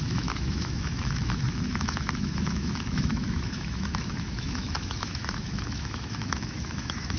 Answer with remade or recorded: remade